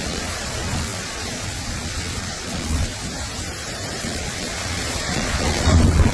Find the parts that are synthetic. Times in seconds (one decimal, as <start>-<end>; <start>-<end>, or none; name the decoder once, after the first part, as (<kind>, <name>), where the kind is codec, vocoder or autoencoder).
0.0-2.9 (vocoder, Vocos); 4.0-6.1